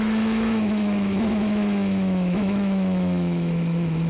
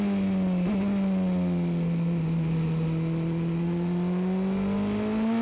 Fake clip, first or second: first